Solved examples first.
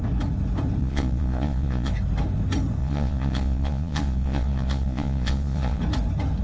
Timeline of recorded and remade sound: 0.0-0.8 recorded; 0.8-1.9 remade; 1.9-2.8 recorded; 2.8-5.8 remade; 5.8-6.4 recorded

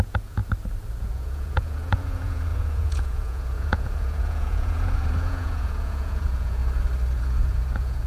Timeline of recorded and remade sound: 0.0-0.4 remade; 0.4-1.0 recorded; 1.0-6.6 remade; 6.6-7.1 recorded; 7.1-8.1 remade

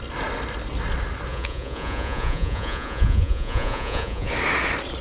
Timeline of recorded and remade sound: 0.0-1.3 recorded; 1.3-4.3 remade; 4.3-5.0 recorded

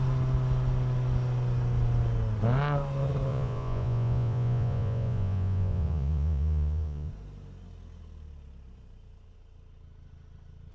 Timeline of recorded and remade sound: 0.0-3.3 recorded; 3.3-7.1 remade; 7.1-10.7 recorded

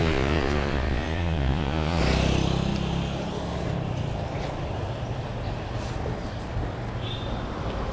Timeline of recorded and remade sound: 0.0-2.0 remade; 2.0-7.9 recorded

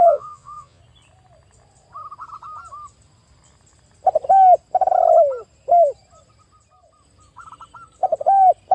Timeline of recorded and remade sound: 0.0-0.8 remade; 0.8-8.7 recorded

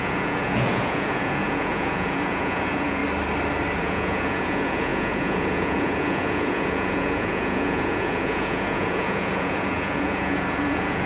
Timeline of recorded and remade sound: 0.0-3.0 remade; 3.0-3.8 recorded; 3.8-11.1 remade